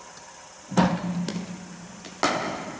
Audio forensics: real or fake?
real